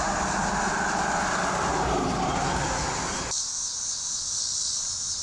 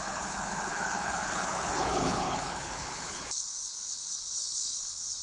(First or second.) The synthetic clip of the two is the second